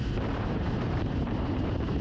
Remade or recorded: remade